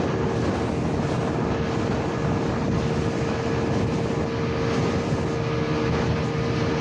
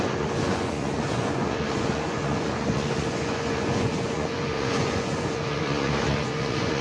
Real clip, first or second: first